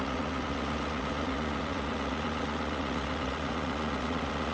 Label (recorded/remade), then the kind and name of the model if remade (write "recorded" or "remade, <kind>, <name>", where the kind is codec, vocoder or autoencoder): remade, vocoder, Vocos